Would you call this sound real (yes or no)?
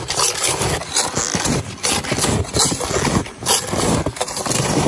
yes